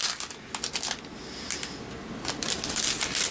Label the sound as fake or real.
real